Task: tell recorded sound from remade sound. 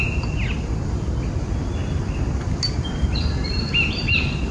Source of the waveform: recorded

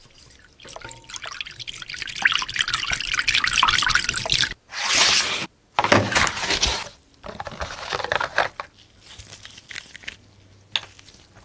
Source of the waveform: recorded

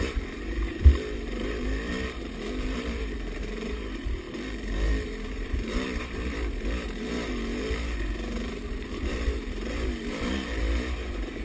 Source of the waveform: remade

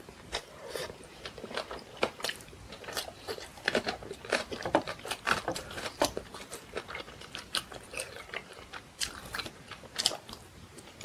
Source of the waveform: remade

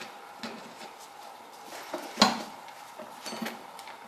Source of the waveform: recorded